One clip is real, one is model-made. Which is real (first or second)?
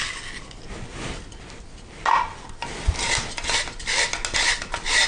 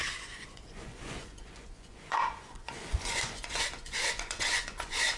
first